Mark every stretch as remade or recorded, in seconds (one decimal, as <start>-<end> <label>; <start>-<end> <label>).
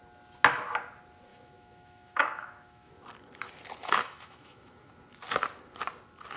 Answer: 0.0-1.3 recorded; 1.3-2.9 remade; 2.9-3.8 recorded; 3.8-4.9 remade; 4.9-6.4 recorded